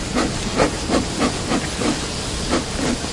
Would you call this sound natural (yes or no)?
yes